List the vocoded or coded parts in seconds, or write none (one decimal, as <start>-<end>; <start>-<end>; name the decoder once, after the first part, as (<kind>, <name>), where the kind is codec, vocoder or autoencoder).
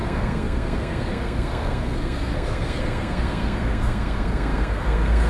0.0-5.3 (codec, SNAC)